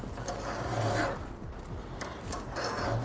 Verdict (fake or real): real